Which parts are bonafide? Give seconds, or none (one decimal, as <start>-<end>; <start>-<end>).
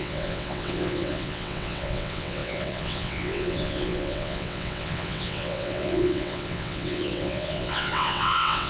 none